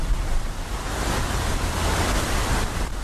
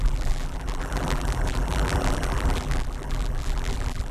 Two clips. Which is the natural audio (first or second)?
first